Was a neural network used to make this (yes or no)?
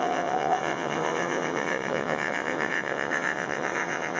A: yes